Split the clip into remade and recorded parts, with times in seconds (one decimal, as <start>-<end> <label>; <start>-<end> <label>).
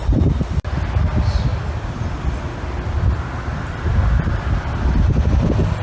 0.0-5.8 recorded